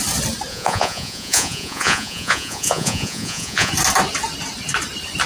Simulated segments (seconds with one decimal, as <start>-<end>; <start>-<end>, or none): 0.5-3.7